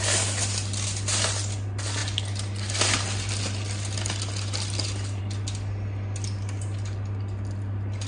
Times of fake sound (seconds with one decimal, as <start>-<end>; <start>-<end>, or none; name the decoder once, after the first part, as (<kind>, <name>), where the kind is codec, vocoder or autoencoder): none